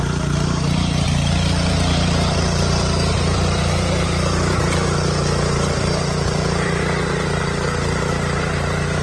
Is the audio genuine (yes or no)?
no